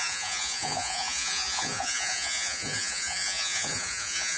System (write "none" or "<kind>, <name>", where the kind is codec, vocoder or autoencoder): vocoder, Vocos